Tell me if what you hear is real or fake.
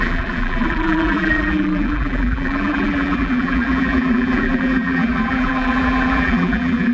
fake